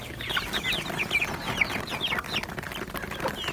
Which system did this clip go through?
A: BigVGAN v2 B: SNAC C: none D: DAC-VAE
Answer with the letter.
C